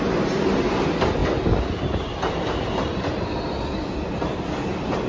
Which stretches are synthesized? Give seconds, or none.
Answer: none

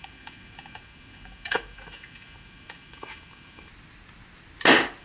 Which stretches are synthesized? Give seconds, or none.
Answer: 0.0-3.7

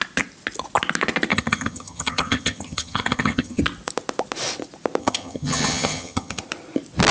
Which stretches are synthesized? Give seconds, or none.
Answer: 1.3-3.6; 5.0-6.4

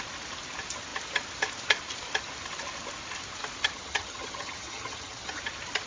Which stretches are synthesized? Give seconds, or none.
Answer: 3.6-5.4